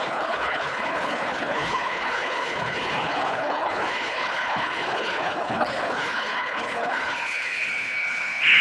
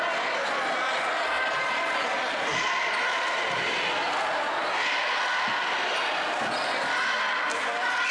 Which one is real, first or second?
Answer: second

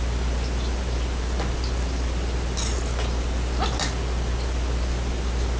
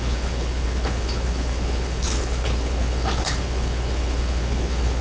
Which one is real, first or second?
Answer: first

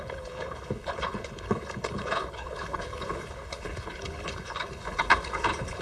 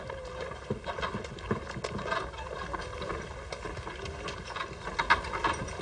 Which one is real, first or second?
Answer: second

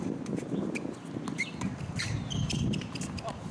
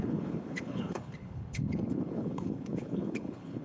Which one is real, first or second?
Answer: first